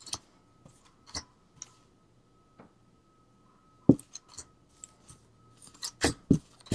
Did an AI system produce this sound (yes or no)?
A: no